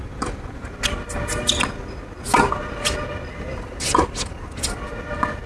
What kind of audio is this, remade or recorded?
recorded